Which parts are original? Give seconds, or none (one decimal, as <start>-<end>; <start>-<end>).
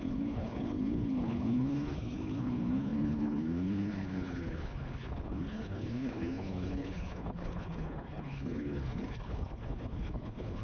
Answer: none